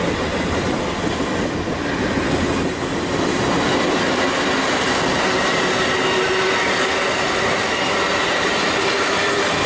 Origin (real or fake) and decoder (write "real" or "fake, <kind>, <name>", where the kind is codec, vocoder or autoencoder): real